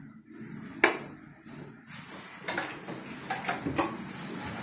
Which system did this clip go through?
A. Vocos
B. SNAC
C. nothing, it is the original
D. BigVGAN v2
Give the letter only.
C